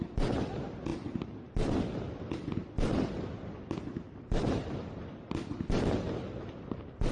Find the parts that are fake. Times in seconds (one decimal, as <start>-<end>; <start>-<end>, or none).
none